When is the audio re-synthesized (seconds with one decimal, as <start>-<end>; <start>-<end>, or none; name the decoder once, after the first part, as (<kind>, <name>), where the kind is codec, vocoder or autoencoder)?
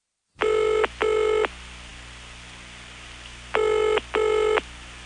none